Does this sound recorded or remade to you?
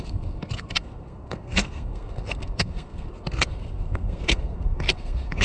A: remade